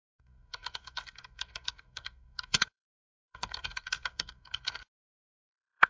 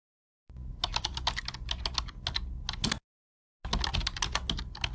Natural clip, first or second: second